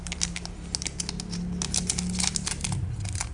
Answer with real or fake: real